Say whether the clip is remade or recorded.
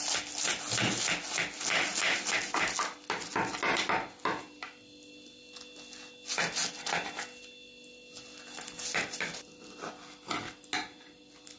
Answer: recorded